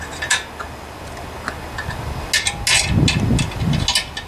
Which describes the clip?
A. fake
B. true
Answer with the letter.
B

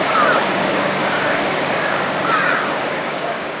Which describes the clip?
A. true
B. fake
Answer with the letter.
B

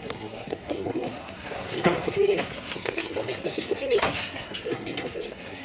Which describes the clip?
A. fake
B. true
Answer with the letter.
A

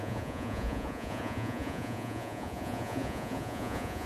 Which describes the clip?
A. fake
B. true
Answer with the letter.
A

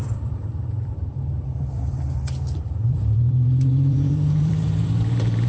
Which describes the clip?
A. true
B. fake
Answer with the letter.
B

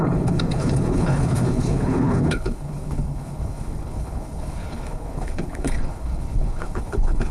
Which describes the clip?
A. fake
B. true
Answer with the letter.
A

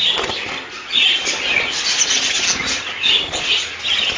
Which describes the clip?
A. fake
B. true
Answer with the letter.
B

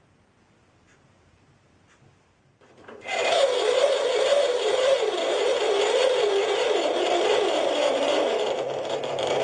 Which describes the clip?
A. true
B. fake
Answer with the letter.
B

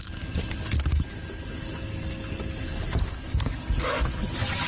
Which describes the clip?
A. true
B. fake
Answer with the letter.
A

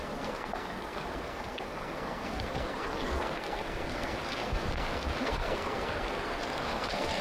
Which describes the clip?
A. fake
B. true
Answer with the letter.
A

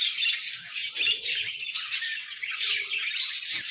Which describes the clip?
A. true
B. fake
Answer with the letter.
A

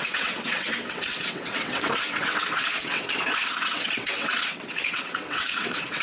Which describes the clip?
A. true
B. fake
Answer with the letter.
B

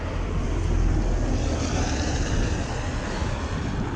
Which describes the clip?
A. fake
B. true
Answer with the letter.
B